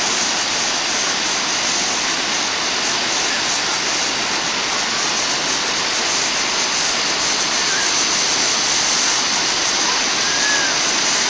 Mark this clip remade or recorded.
recorded